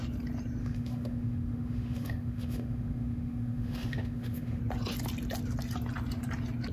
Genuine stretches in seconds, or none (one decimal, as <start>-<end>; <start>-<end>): 0.0-0.6; 4.6-6.7